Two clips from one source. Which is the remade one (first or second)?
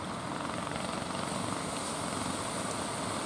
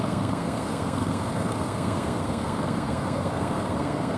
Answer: second